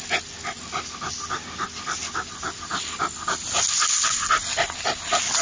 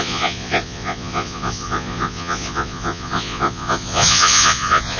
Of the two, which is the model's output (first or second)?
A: second